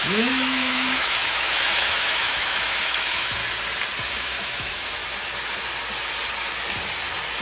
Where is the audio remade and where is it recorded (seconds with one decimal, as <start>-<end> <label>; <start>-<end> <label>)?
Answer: 0.0-3.4 remade; 3.4-4.1 recorded; 4.1-5.0 remade; 5.0-7.4 recorded